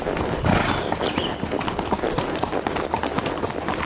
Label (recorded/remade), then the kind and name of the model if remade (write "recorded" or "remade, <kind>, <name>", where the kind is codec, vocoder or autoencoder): recorded